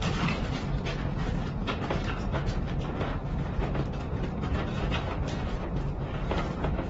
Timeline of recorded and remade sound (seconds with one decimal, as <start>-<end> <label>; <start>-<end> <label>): 0.0-1.4 recorded; 1.4-1.9 remade; 1.9-6.9 recorded